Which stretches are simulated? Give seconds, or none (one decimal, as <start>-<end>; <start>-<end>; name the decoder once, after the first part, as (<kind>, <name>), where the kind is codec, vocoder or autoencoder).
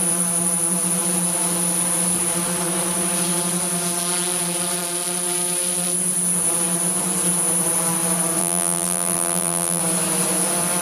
8.4-9.8 (vocoder, BigVGAN v2)